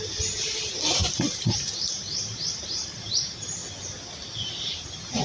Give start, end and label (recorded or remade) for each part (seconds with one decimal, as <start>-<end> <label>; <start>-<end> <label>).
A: 0.0-3.6 remade; 3.6-4.7 recorded; 4.7-5.2 remade